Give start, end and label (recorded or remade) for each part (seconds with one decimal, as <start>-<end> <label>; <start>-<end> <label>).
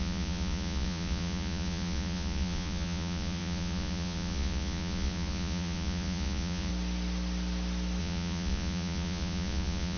0.0-6.7 remade; 6.7-8.0 recorded; 8.0-10.0 remade